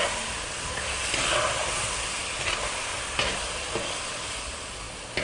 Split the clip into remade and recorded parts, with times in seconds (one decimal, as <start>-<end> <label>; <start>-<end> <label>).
0.0-5.2 recorded